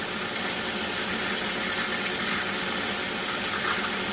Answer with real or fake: real